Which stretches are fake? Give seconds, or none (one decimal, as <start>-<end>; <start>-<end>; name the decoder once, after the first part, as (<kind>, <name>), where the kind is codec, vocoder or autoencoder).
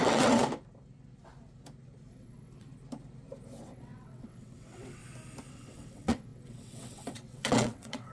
0.0-0.4 (vocoder, WaveNeXt); 2.1-2.7; 3.6-5.0; 5.5-8.1